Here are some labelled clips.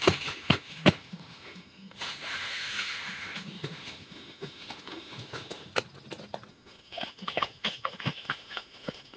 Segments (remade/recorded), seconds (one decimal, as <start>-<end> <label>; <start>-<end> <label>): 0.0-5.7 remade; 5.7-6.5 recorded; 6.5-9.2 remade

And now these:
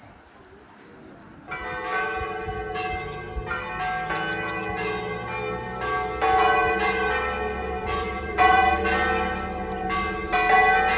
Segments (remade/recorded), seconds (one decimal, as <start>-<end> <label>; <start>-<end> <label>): 0.0-7.8 recorded; 7.8-8.8 remade; 8.8-11.0 recorded

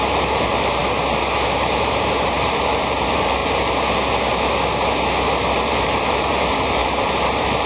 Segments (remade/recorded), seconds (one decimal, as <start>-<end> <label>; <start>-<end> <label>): 0.0-0.8 remade; 0.8-1.8 recorded; 1.8-3.4 remade; 3.4-5.5 recorded; 5.5-7.7 remade

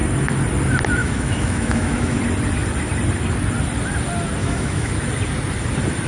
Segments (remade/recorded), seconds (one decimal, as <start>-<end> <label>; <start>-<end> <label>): 0.0-1.0 recorded; 1.0-2.2 remade; 2.2-4.4 recorded; 4.4-4.9 remade; 4.9-6.1 recorded

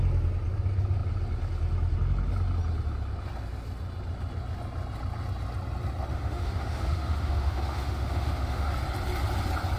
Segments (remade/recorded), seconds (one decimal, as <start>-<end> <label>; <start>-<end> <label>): 0.0-6.1 recorded; 6.1-8.7 remade; 8.7-9.8 recorded

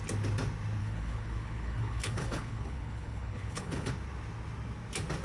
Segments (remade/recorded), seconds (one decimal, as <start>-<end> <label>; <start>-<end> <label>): 0.0-0.8 recorded; 0.8-3.9 remade; 3.9-5.2 recorded

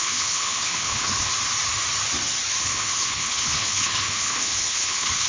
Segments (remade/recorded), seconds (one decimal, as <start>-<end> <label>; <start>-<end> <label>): 0.0-1.3 remade; 1.3-2.6 recorded; 2.6-5.3 remade